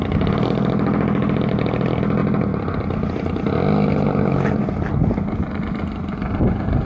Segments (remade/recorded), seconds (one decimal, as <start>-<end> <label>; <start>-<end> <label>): 0.0-6.9 recorded